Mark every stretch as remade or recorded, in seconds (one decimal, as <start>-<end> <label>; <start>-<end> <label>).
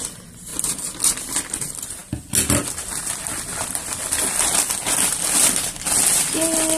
0.0-6.8 recorded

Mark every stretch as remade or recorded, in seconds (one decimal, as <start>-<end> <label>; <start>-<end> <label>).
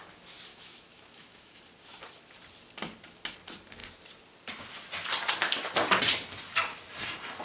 0.0-0.5 recorded; 0.5-1.6 remade; 1.6-7.4 recorded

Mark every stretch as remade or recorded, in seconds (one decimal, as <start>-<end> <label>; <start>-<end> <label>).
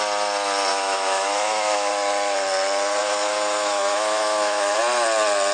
0.0-0.7 recorded; 0.7-1.9 remade; 1.9-3.0 recorded; 3.0-4.8 remade; 4.8-5.5 recorded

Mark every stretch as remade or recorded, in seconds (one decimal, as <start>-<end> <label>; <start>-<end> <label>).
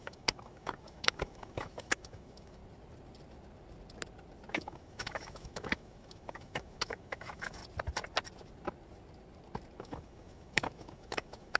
0.0-2.6 remade; 2.6-4.5 recorded; 4.5-7.6 remade; 7.6-9.8 recorded; 9.8-11.6 remade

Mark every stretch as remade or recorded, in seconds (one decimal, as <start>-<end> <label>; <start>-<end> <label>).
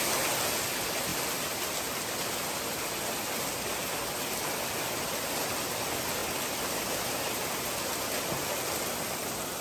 0.0-9.6 recorded